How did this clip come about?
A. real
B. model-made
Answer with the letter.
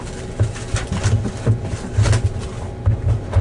A